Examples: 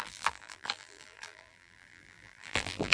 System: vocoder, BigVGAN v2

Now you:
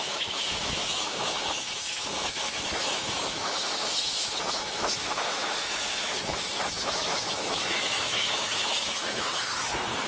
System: autoencoder, DAC-VAE